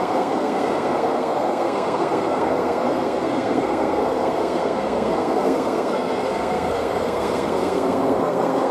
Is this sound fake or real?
fake